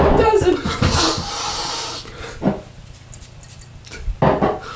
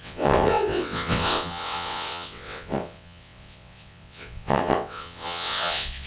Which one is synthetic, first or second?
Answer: second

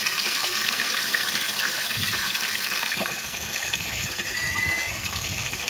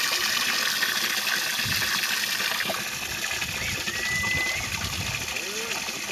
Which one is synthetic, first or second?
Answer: first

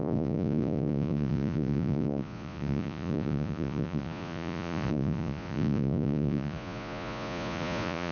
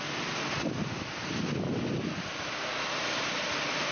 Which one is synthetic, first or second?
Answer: first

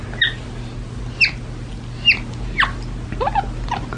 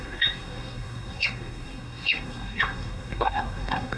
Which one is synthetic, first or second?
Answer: second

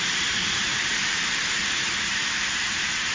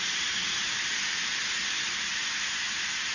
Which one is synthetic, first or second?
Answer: first